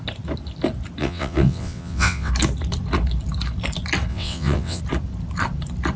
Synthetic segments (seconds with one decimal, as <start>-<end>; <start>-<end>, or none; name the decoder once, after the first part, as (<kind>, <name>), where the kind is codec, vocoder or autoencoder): 1.0-2.3 (vocoder, WaveNeXt); 4.1-4.8

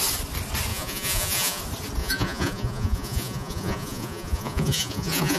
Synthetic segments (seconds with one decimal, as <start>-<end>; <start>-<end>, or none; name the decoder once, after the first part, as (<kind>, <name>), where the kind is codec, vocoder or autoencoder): 0.7-1.6 (vocoder, Vocos); 2.0-5.4

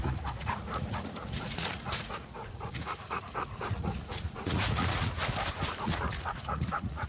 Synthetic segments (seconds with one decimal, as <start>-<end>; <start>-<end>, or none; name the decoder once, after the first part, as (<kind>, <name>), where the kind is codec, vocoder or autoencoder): 0.0-5.2 (vocoder, Vocos); 5.8-7.1

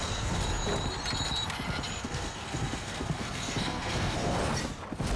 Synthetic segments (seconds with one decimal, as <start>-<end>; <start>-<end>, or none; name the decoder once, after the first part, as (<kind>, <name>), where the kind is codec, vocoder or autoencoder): 0.0-0.4 (codec, SNAC); 2.0-4.4

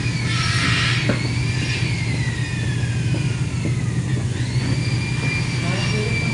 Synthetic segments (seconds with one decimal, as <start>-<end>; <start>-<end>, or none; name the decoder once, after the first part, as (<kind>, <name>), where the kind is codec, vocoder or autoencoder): 4.1-4.8 (vocoder, Vocos)